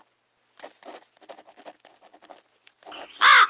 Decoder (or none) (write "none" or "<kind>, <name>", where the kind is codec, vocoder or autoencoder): none